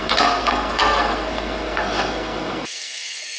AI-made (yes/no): yes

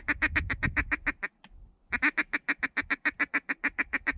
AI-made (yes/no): no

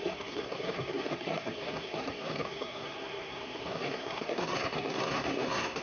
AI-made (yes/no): yes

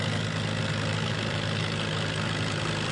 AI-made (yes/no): no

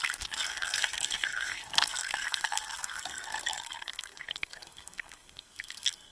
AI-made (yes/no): yes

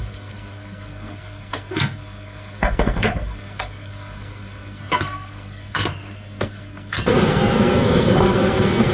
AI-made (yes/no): yes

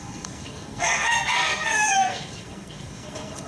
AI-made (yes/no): yes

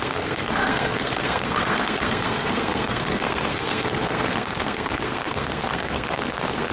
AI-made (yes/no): yes